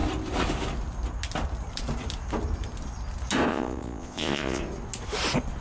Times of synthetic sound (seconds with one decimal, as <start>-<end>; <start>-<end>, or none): 3.5-4.6